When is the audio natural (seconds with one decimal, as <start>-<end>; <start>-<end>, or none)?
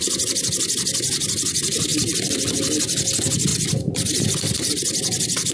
0.0-3.5; 4.7-5.5